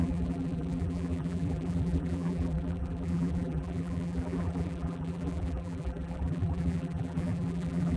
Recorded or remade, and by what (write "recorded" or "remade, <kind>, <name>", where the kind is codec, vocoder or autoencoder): remade, vocoder, BigVGAN v2